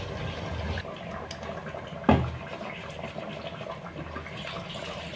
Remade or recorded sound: recorded